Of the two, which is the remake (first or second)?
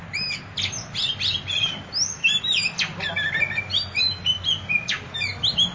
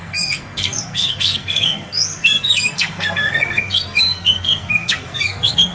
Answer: second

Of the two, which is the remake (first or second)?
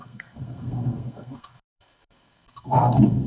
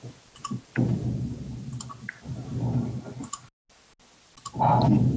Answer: first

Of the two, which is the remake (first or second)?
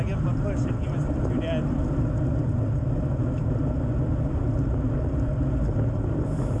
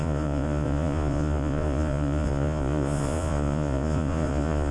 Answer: second